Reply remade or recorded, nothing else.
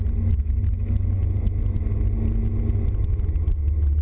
recorded